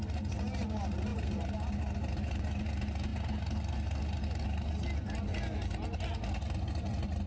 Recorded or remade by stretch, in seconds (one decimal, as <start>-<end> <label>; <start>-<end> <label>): 0.0-7.3 recorded